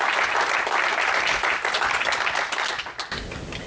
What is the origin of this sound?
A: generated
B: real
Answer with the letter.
B